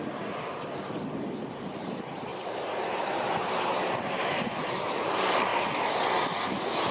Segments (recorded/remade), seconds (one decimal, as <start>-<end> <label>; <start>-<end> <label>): 0.0-1.9 recorded; 1.9-5.5 remade; 5.5-6.5 recorded; 6.5-6.9 remade